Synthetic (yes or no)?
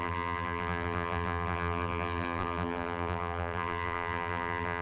yes